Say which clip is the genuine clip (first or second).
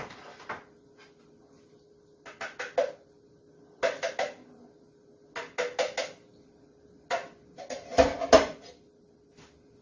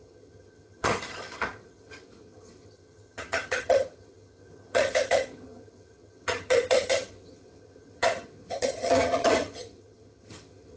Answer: first